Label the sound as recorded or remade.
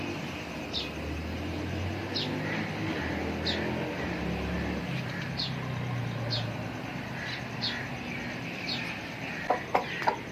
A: remade